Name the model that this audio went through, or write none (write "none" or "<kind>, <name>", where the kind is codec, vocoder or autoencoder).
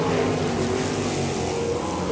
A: none